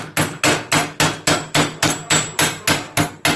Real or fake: real